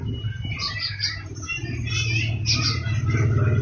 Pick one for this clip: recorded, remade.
recorded